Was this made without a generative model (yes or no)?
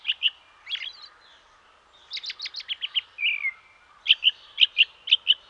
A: yes